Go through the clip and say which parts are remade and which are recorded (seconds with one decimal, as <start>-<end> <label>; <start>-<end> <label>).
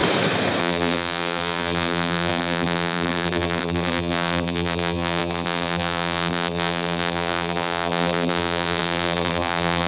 0.0-0.6 recorded; 0.6-9.9 remade